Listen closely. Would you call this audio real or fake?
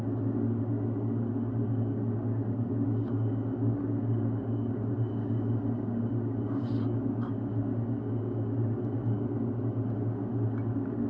real